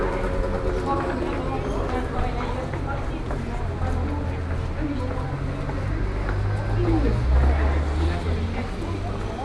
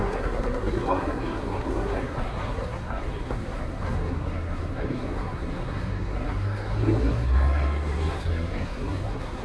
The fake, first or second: second